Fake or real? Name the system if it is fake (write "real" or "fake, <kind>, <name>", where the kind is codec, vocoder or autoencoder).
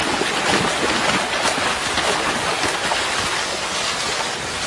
real